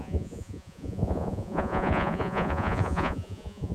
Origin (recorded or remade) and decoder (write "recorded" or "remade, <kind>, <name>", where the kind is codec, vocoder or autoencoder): remade, vocoder, Vocos